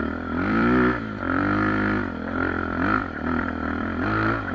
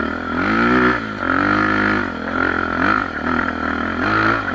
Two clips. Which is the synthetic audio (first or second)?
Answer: first